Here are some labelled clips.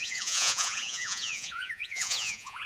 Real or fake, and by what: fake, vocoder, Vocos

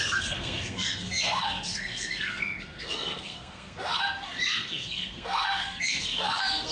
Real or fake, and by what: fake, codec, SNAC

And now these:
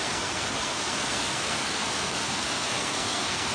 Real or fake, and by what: fake, codec, SNAC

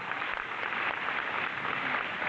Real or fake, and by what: fake, vocoder, BigVGAN v2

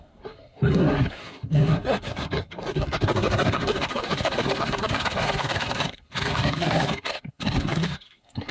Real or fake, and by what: fake, codec, SNAC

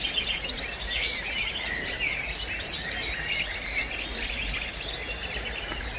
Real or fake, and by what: real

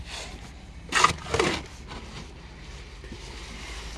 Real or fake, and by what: real